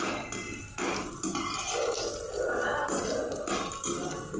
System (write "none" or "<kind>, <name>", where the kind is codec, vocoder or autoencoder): none